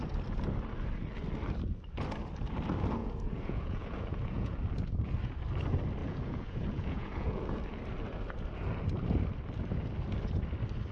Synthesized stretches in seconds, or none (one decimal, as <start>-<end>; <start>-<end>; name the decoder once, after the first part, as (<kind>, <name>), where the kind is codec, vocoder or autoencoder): 3.0-4.6 (vocoder, Vocos); 6.0-7.6